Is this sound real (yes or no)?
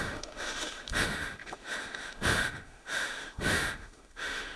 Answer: no